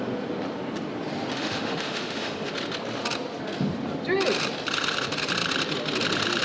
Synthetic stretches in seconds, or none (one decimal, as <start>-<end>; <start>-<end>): 1.3-2.5

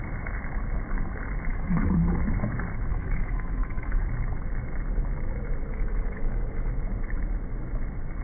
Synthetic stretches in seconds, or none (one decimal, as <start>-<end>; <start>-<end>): 1.5-2.0; 2.9-4.0; 5.7-6.7